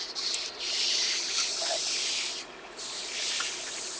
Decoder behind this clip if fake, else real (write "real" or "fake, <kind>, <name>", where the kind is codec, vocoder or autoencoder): real